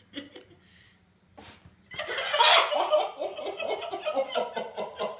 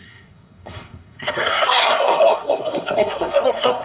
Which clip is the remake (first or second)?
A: second